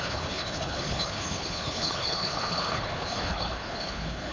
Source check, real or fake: fake